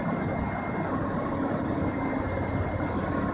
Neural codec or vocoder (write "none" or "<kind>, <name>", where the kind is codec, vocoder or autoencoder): none